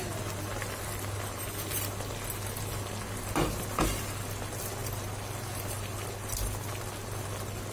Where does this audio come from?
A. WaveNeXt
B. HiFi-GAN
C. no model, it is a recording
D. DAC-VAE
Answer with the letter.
C